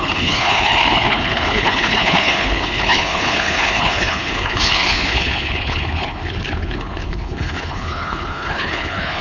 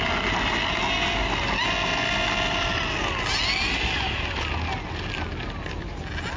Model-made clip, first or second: first